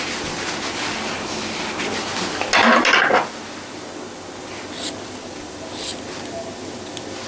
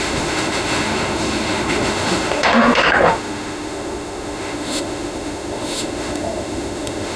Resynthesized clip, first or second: second